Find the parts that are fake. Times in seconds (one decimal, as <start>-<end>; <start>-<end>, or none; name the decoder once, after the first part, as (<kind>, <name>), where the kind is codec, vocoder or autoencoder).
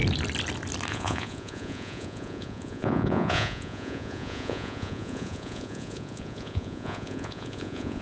0.9-8.0 (vocoder, Vocos)